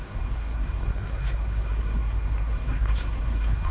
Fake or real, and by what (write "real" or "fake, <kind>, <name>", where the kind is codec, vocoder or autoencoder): fake, codec, SNAC